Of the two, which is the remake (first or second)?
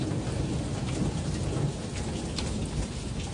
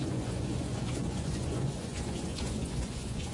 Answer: second